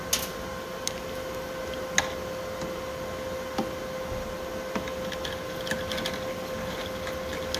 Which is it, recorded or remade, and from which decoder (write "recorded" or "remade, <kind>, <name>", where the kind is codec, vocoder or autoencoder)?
recorded